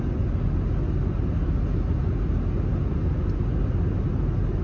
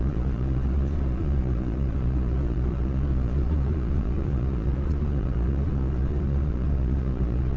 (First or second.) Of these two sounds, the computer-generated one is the second